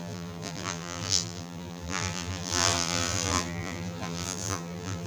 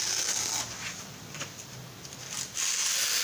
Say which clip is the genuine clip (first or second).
second